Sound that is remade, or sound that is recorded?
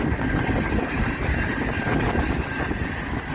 recorded